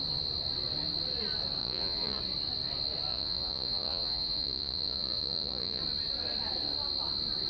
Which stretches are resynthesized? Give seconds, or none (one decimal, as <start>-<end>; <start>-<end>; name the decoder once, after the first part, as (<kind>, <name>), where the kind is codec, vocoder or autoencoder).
1.6-2.2 (vocoder, Vocos); 3.1-5.8